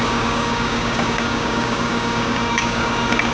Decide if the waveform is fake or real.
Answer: fake